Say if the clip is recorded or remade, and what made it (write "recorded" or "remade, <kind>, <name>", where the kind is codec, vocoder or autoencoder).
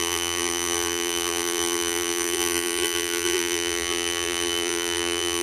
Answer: remade, vocoder, BigVGAN v2